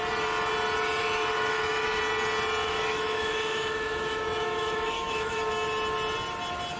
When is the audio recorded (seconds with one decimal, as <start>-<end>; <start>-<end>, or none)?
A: 0.0-1.0; 2.0-2.6; 5.4-6.8

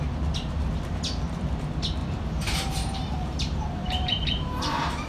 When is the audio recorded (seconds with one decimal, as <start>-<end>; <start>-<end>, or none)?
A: 0.0-2.0

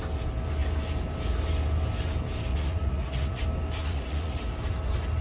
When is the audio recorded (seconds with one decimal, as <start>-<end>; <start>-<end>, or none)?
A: 0.0-2.5; 3.4-3.8; 4.4-5.2

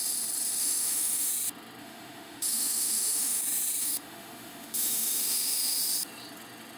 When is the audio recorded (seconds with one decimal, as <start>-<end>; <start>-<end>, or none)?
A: 0.0-0.6; 1.3-1.8; 3.4-3.8; 5.8-6.8

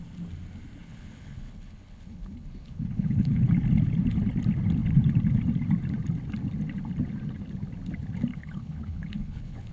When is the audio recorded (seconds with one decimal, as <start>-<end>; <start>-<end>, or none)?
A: 0.0-0.8; 3.5-8.3

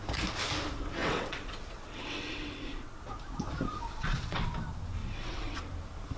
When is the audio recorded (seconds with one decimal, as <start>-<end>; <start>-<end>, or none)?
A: 0.0-1.0; 2.9-3.7; 4.4-5.0; 5.6-6.2

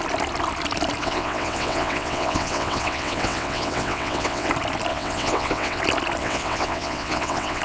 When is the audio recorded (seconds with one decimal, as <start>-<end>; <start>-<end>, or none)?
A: 0.0-1.0; 4.5-4.9; 5.8-6.2